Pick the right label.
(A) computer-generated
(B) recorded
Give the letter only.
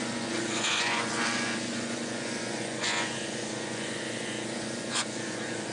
A